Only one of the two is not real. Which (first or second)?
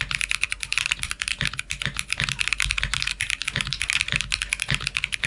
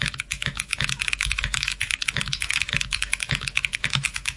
second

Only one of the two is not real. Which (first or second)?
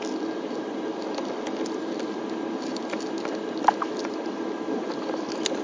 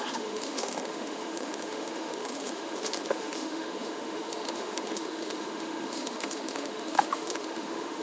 second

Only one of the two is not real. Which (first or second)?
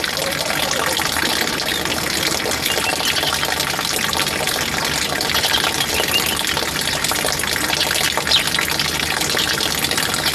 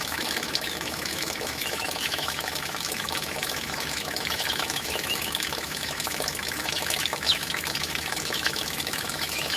second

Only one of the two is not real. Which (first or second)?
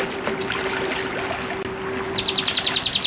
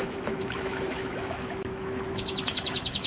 second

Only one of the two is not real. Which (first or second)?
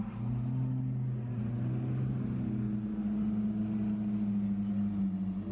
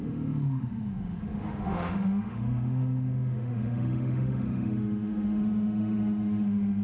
second